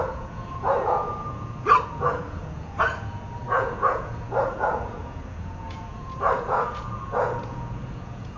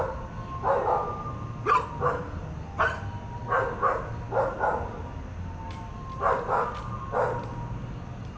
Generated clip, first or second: first